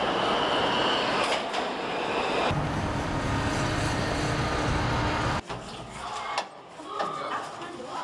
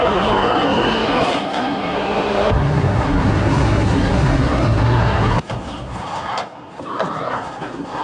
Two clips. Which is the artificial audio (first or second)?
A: second